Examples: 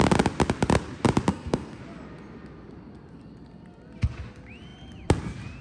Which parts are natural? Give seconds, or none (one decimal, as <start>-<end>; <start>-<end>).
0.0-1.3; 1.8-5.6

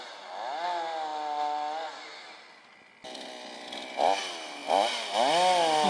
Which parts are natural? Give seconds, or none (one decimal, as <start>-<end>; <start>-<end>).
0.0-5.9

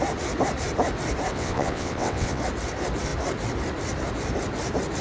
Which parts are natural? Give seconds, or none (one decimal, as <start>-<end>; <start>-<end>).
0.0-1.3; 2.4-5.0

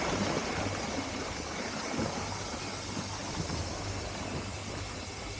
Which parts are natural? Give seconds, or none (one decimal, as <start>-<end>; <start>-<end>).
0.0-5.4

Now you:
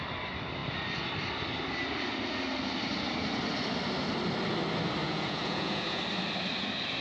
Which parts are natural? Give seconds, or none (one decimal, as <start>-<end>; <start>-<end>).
0.0-5.0; 6.0-7.0

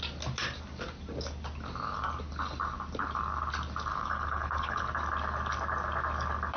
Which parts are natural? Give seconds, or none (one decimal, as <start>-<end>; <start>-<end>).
0.0-3.9; 4.9-6.6

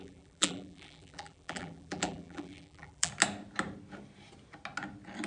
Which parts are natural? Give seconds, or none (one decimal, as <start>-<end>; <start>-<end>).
3.1-5.3

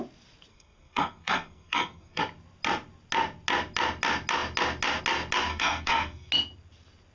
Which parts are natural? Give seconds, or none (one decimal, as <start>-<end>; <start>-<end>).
0.0-0.5; 2.2-5.5; 6.3-7.1